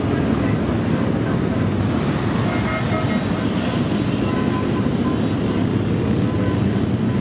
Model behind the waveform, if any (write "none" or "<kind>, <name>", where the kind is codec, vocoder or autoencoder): none